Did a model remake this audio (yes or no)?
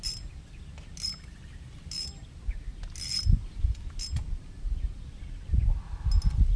no